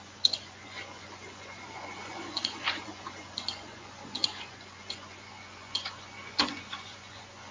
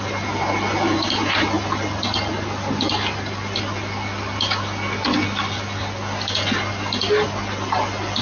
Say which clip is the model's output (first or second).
first